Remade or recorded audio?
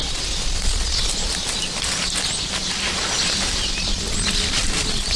recorded